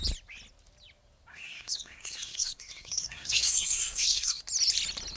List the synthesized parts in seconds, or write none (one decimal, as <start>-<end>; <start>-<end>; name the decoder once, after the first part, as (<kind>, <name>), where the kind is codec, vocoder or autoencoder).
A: 1.3-4.4 (codec, SNAC)